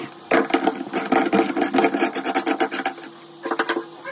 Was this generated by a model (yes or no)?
no